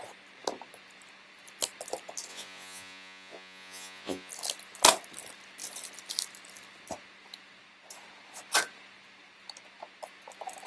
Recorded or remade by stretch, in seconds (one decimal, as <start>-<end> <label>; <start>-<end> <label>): 0.0-2.3 recorded; 2.3-4.3 remade; 4.3-10.7 recorded